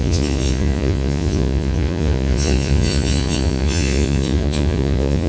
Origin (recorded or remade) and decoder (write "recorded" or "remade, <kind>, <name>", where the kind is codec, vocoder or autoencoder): remade, vocoder, Vocos